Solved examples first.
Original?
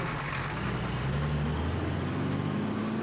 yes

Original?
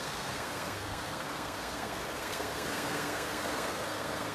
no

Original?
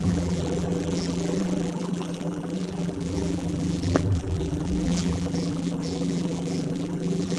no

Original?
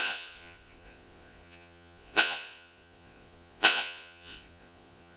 no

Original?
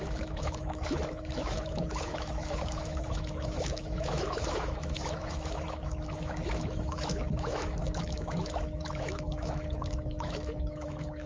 no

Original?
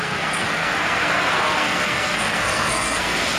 no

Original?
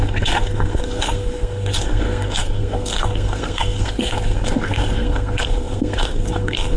no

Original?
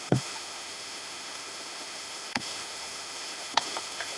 no